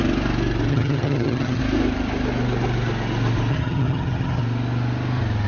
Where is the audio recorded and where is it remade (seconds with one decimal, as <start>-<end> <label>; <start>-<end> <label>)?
0.0-0.7 recorded; 0.7-1.6 remade; 1.6-3.5 recorded; 3.5-4.4 remade; 4.4-5.5 recorded